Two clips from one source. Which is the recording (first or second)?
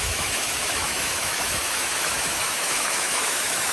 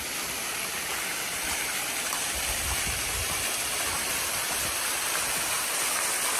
second